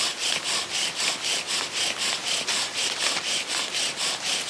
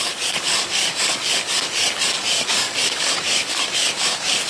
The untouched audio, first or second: first